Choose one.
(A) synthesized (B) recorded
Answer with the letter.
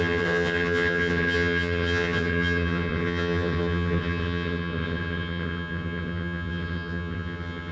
A